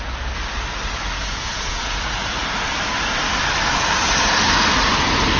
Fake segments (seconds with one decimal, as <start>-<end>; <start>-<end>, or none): 1.2-2.0